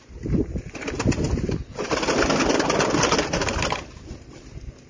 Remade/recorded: recorded